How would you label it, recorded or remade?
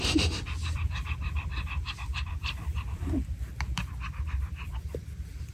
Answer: remade